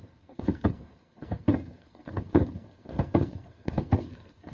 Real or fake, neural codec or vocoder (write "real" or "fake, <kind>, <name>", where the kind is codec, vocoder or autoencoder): fake, codec, SNAC